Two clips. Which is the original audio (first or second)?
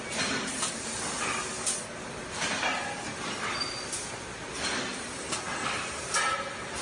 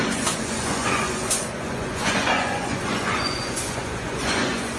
first